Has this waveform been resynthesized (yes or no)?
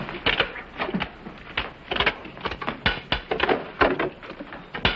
no